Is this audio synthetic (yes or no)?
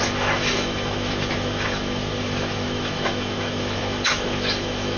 yes